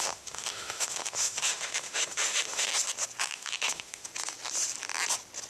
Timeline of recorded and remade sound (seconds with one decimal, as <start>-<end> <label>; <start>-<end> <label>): 0.0-2.7 remade; 2.7-3.2 recorded; 3.2-4.1 remade; 4.1-5.5 recorded